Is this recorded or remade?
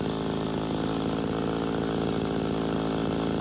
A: recorded